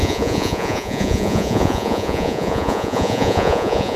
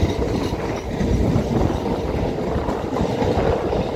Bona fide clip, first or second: second